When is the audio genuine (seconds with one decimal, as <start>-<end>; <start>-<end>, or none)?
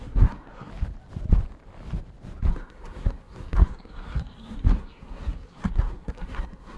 0.7-2.5